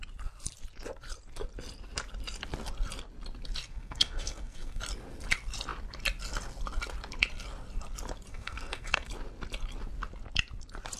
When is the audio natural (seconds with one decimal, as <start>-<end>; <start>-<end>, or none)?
0.0-3.7; 4.8-8.3; 9.1-11.0